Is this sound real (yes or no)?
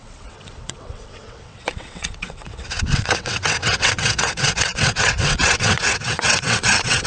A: no